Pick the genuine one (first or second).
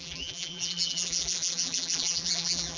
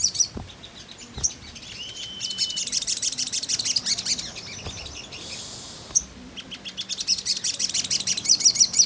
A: second